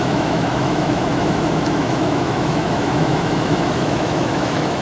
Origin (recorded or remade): remade